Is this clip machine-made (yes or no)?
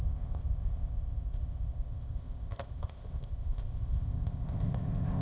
yes